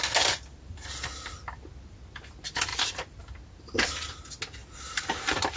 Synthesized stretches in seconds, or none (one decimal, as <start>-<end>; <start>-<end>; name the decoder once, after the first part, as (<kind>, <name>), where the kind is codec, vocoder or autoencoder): 2.7-3.2 (vocoder, BigVGAN v2); 4.6-5.6